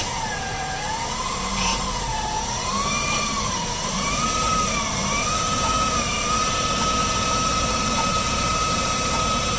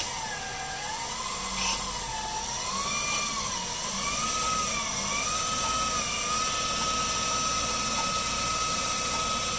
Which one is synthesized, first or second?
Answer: first